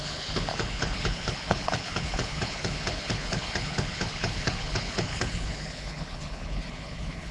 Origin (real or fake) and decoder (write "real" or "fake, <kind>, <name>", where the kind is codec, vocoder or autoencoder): fake, codec, HILCodec